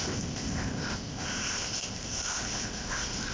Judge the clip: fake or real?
fake